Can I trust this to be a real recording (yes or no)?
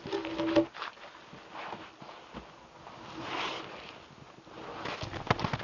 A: yes